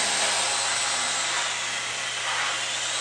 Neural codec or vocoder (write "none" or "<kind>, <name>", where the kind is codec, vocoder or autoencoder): none